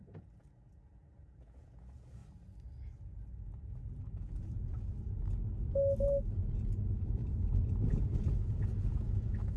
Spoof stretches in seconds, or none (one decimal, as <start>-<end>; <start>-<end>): 0.0-2.2; 4.0-4.9; 6.0-7.2; 7.9-9.6